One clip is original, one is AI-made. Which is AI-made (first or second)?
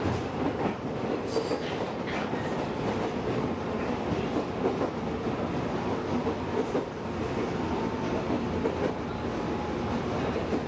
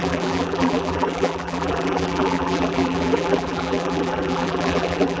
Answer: second